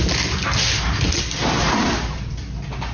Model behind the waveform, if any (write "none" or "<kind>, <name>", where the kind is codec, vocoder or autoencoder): none